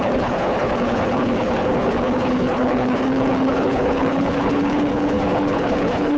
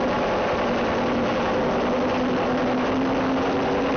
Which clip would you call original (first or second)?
second